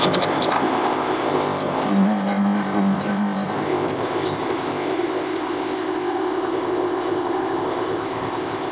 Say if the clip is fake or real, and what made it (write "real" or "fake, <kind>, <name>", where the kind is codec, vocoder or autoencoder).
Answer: fake, codec, ZipCodec